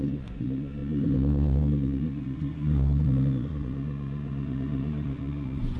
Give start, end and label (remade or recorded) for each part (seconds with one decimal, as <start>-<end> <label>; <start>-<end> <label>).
0.0-5.8 remade